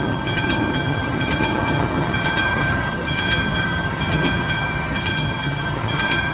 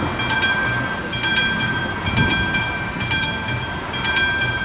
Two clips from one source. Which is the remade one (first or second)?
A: first